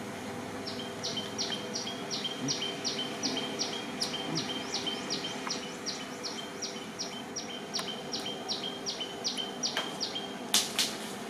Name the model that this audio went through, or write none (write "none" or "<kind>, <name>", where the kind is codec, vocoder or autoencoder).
none